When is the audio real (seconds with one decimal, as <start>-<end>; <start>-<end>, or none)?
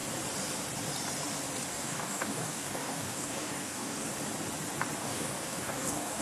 0.0-1.7; 4.1-5.0